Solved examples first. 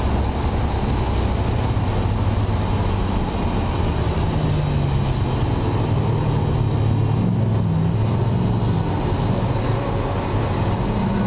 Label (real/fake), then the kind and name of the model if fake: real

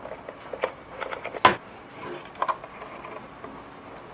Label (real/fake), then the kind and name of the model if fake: real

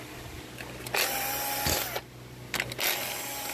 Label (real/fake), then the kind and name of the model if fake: real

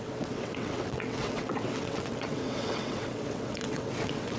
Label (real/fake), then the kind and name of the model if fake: fake, vocoder, WaveNeXt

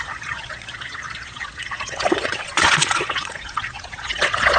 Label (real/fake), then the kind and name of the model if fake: fake, vocoder, Vocos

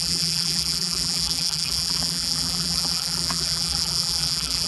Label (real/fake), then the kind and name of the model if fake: fake, vocoder, BigVGAN v2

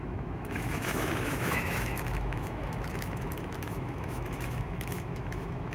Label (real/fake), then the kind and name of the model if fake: fake, autoencoder, DAC-VAE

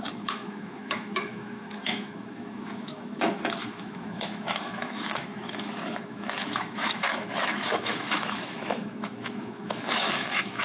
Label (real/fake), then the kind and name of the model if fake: fake, autoencoder, DAC-VAE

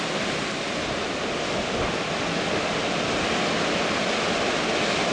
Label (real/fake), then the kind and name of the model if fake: real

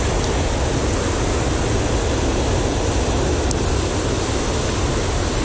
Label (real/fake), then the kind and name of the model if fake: real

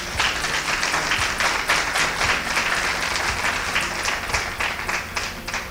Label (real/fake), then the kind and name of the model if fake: real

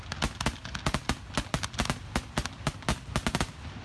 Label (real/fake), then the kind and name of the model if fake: real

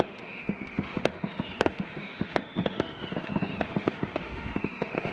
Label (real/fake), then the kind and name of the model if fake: fake, autoencoder, DAC-VAE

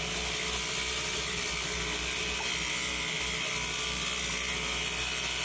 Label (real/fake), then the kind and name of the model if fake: real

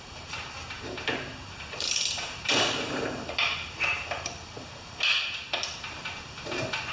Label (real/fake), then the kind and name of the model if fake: fake, vocoder, BigVGAN v2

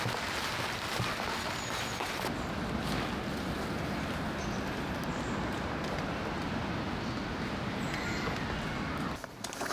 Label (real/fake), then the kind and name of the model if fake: real